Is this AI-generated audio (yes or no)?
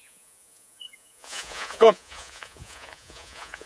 yes